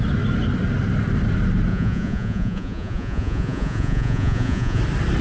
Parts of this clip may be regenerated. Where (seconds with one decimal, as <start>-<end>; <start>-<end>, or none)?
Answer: 1.7-4.8